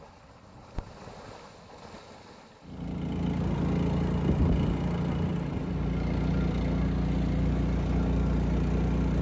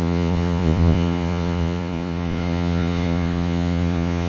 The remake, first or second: second